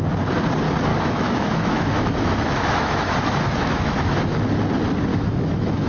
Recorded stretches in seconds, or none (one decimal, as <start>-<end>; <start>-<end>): 0.0-0.9; 4.4-5.1